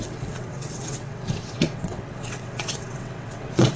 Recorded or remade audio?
remade